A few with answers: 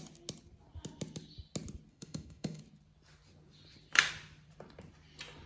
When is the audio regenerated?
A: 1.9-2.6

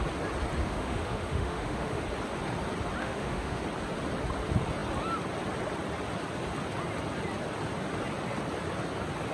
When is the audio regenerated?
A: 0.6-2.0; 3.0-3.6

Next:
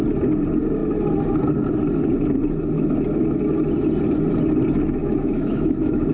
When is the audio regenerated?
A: 5.0-6.1

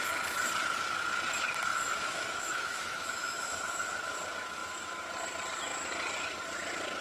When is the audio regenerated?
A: 1.7-3.6